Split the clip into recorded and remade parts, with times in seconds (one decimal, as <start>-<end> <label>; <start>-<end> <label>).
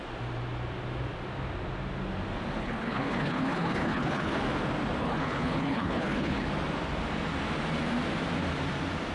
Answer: 0.0-2.6 recorded; 2.6-4.3 remade; 4.3-5.0 recorded; 5.0-6.5 remade; 6.5-9.1 recorded